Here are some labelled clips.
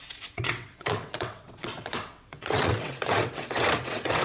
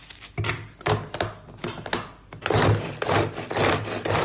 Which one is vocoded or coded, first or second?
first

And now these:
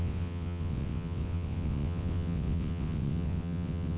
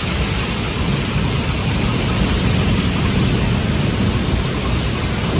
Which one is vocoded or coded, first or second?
first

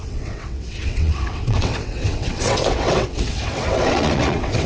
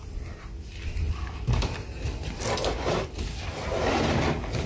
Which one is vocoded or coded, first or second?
first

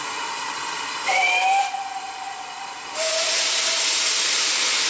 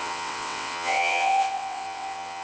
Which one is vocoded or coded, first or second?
second